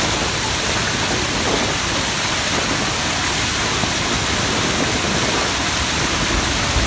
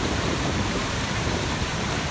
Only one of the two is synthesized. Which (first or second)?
second